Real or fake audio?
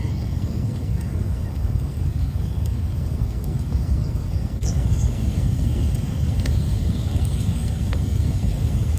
fake